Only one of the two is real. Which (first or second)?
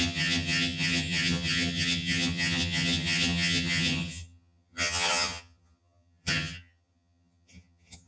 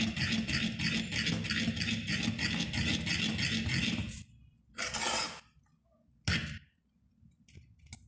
second